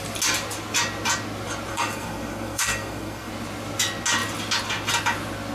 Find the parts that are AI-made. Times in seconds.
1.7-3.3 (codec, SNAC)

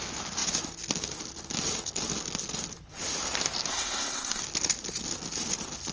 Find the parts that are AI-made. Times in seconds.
3.7-4.4 (codec, SNAC)

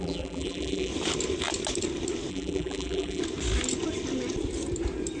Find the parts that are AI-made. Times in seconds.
0.0-0.9 (vocoder, BigVGAN v2); 2.3-3.2

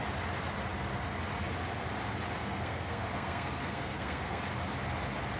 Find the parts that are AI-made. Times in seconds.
2.4-4.4 (codec, SNAC)

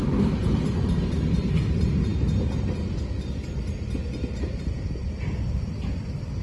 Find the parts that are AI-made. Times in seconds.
none

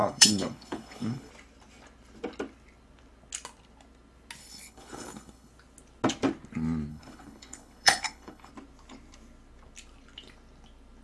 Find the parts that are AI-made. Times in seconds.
0.0-1.3 (codec, HILCodec); 4.4-5.5; 6.9-8.5